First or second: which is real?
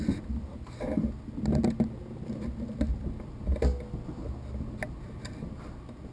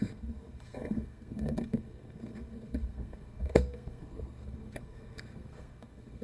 first